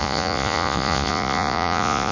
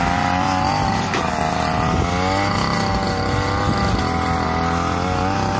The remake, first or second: first